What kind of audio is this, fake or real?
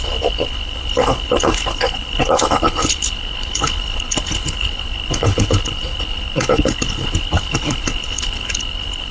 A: fake